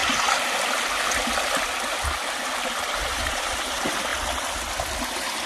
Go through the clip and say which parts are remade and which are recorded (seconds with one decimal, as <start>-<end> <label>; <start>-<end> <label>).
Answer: 0.0-2.9 recorded; 2.9-4.1 remade; 4.1-5.5 recorded